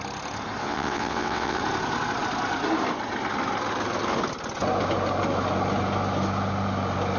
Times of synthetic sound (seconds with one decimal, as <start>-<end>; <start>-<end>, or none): 0.6-1.6